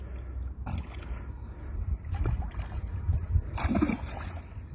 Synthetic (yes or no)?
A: no